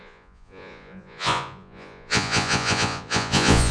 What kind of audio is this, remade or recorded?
remade